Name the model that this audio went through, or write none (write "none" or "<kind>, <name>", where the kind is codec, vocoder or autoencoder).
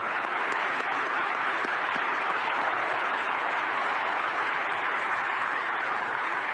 codec, HILCodec